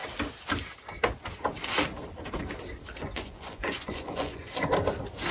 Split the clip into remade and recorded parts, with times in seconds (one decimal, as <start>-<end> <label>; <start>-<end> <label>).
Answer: 0.0-3.0 recorded; 3.0-4.6 remade; 4.6-5.3 recorded